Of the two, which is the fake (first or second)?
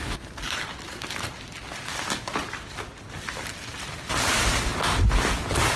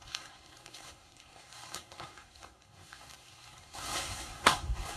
second